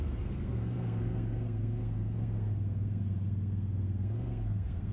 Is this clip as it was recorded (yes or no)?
no